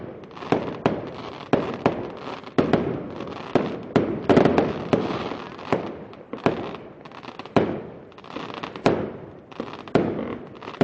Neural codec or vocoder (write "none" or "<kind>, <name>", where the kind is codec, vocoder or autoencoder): none